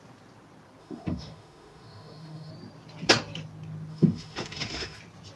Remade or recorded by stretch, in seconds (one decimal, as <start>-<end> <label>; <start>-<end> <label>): 0.0-0.8 recorded; 0.8-2.5 remade; 2.5-3.9 recorded; 3.9-5.0 remade; 5.0-5.4 recorded